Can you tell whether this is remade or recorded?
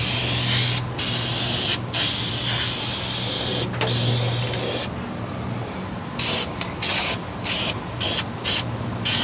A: recorded